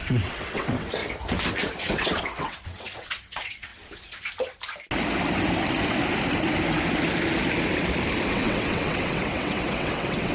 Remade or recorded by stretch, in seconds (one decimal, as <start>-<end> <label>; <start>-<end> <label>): 0.0-1.0 remade; 1.0-1.8 recorded; 1.8-3.7 remade; 3.7-8.3 recorded; 8.3-10.3 remade